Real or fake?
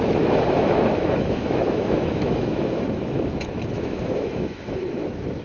fake